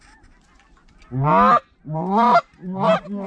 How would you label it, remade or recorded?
recorded